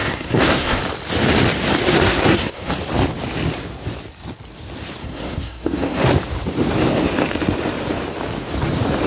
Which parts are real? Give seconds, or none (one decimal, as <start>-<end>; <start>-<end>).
0.8-1.9; 2.7-5.0; 6.1-9.1